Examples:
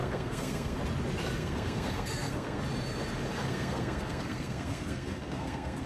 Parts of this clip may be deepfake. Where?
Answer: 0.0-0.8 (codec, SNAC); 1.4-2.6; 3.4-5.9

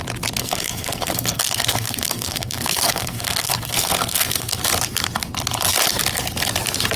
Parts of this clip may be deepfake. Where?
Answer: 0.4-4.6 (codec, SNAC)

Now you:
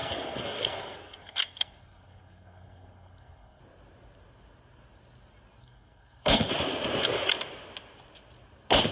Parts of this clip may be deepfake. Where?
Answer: 0.0-3.6 (codec, SNAC); 5.6-6.5